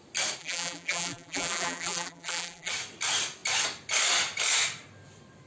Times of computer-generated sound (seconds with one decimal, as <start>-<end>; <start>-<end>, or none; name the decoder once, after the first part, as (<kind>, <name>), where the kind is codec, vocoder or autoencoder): 0.4-2.7 (vocoder, BigVGAN v2)